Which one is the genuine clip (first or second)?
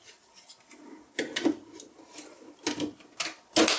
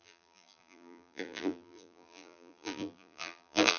first